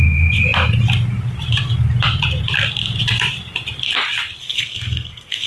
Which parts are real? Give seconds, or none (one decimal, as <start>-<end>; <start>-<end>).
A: 0.0-4.4